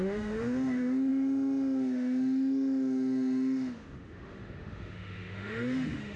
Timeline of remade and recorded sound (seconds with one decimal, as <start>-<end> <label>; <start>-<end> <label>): 0.0-6.2 remade